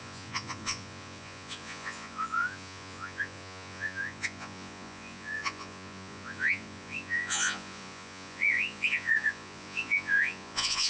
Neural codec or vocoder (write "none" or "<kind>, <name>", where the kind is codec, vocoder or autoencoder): vocoder, Vocos